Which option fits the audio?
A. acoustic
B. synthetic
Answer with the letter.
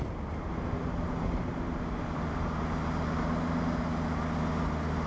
A